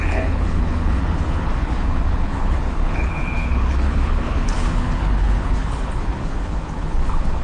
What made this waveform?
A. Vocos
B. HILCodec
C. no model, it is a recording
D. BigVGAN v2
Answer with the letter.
B